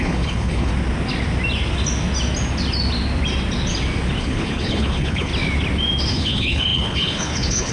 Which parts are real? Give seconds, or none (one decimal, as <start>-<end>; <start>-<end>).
0.7-4.2; 5.3-6.1